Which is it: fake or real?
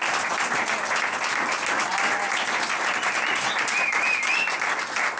real